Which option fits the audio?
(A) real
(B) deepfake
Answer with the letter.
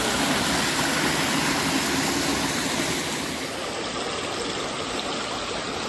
A